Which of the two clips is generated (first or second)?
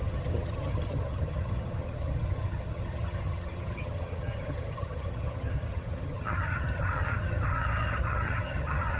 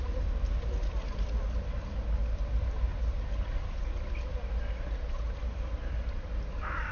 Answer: first